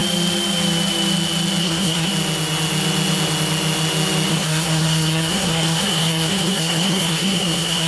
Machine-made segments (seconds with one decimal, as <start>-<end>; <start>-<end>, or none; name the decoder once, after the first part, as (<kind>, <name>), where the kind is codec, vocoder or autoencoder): 1.6-2.1 (codec, SNAC); 4.3-7.9